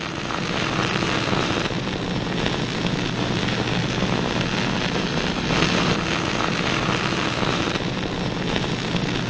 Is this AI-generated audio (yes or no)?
no